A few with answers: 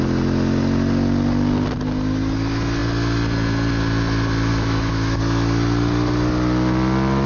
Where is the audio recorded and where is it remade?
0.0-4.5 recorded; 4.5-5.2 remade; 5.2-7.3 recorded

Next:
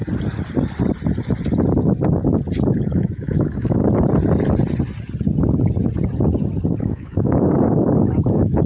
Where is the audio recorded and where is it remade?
0.0-2.9 recorded; 2.9-3.8 remade; 3.8-6.8 recorded; 6.8-8.7 remade

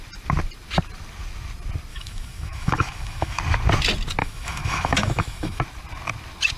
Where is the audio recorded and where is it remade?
0.0-1.9 recorded; 1.9-3.4 remade; 3.4-4.2 recorded; 4.2-5.6 remade; 5.6-6.6 recorded

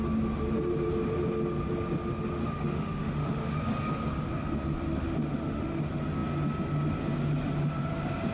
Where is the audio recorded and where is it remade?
0.0-2.4 recorded; 2.4-3.6 remade; 3.6-5.2 recorded; 5.2-5.8 remade; 5.8-8.3 recorded

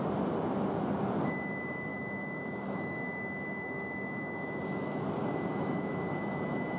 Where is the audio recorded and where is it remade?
0.0-1.9 recorded; 1.9-4.6 remade; 4.6-5.2 recorded; 5.2-5.9 remade; 5.9-6.8 recorded

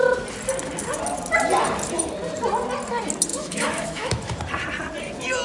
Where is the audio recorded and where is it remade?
0.0-3.3 recorded; 3.3-4.4 remade; 4.4-5.4 recorded

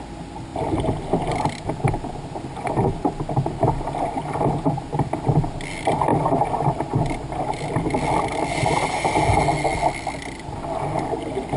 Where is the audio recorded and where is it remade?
0.0-11.6 recorded

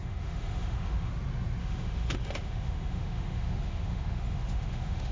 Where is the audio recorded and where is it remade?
0.0-1.1 remade; 1.1-1.6 recorded; 1.6-5.1 remade